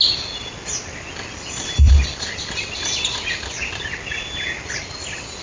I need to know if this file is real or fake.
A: real